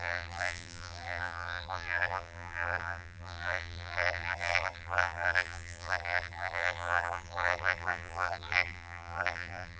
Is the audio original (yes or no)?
no